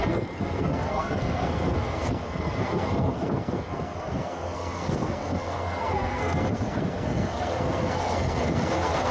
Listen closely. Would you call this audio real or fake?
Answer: fake